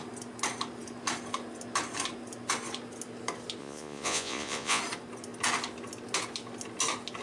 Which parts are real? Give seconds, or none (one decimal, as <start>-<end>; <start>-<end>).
0.0-3.6; 4.8-7.2